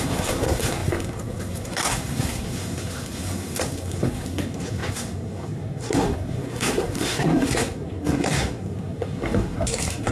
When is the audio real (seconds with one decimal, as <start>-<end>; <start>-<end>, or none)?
none